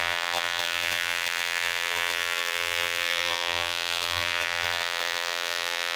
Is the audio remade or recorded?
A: remade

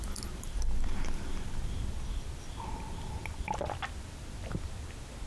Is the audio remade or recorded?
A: recorded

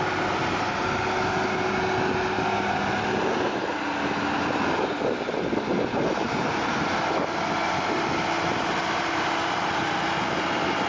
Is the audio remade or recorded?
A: recorded